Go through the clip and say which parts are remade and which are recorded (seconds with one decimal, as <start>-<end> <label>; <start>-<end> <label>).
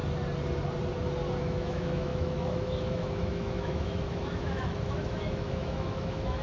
0.0-1.4 recorded; 1.4-6.4 remade